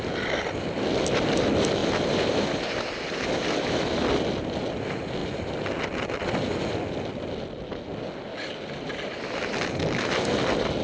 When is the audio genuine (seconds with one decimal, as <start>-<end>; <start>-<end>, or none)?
0.0-10.8